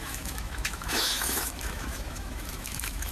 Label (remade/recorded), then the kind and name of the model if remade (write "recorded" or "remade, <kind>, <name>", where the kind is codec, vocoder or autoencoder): remade, autoencoder, DAC-VAE